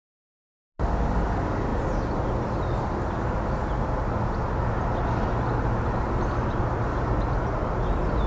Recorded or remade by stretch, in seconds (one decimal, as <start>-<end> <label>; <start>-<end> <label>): 0.0-8.3 recorded